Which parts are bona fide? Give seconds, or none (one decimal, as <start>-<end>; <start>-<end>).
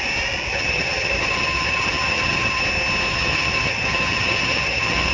0.0-0.5; 2.6-3.1